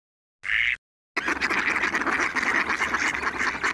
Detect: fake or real real